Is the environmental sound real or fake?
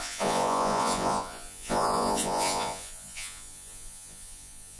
fake